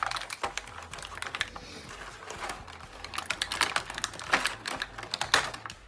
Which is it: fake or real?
real